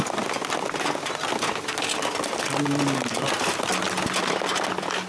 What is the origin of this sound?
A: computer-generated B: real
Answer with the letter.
B